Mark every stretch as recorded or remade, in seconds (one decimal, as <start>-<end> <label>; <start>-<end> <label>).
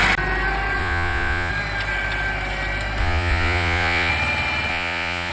0.0-0.8 recorded; 0.8-1.5 remade; 1.5-3.0 recorded; 3.0-4.1 remade; 4.1-4.7 recorded; 4.7-5.3 remade